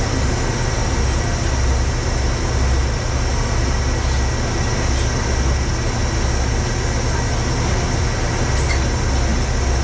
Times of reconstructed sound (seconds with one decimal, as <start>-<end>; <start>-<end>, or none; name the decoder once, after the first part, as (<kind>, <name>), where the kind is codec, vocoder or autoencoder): none